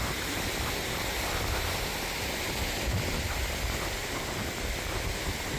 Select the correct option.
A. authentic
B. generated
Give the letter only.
A